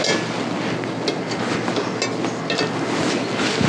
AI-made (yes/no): no